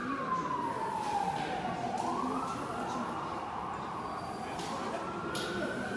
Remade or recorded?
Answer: recorded